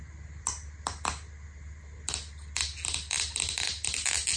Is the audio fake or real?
real